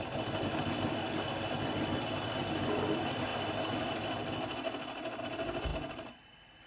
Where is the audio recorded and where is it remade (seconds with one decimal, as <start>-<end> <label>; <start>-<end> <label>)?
0.0-6.7 recorded